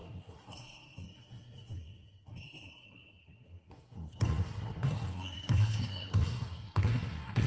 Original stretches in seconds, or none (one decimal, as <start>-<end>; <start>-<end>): none